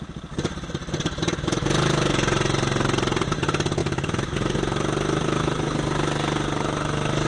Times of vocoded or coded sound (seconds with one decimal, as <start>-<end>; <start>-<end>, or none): none

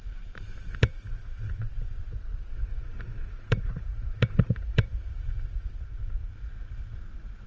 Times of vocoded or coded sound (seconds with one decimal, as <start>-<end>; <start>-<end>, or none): 0.7-1.6; 2.5-7.0

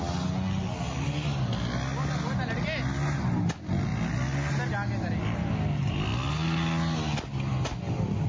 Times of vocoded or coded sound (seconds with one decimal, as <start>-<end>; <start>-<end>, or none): none

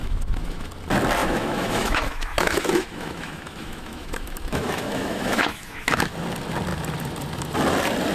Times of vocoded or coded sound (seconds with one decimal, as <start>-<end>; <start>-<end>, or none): 0.0-0.7; 1.2-6.1